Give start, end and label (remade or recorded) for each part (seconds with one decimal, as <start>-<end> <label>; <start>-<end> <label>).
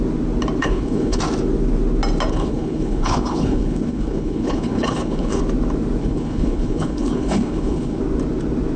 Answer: 0.0-0.6 recorded; 0.6-1.2 remade; 1.2-2.3 recorded; 2.3-5.4 remade; 5.4-6.0 recorded; 6.0-8.0 remade; 8.0-8.8 recorded